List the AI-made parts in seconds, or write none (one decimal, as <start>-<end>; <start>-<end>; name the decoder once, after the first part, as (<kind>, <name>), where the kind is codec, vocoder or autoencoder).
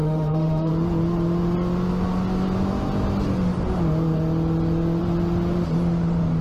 0.0-0.7 (autoencoder, DAC-VAE)